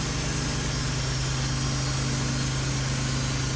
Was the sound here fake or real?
real